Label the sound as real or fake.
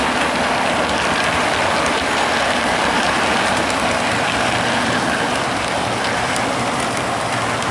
real